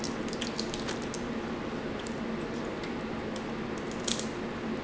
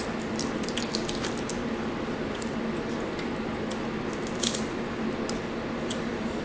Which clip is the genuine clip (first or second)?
first